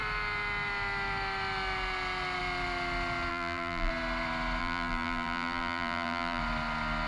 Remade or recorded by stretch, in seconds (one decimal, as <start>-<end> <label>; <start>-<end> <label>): 0.0-3.3 recorded; 3.3-3.9 remade; 3.9-4.6 recorded; 4.6-6.4 remade; 6.4-7.1 recorded